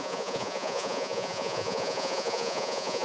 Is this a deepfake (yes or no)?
yes